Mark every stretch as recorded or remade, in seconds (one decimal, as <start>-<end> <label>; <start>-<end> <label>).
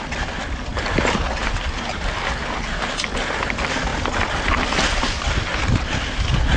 0.0-6.6 recorded